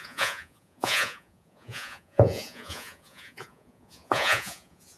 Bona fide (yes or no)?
no